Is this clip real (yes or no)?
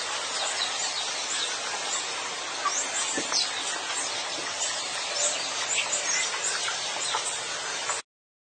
yes